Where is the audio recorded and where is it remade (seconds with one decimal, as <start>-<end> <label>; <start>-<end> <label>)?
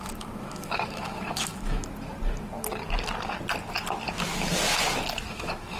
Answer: 0.0-1.8 remade; 1.8-5.3 recorded; 5.3-5.8 remade